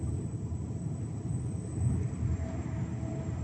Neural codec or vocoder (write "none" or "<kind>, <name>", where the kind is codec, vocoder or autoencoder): none